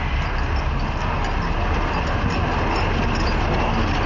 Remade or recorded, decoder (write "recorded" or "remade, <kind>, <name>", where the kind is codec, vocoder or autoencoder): recorded